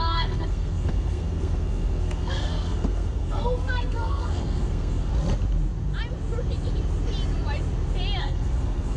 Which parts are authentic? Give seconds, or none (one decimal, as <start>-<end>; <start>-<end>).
5.1-8.2